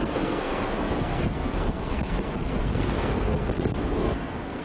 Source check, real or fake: fake